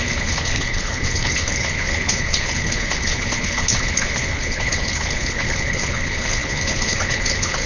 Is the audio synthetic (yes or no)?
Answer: yes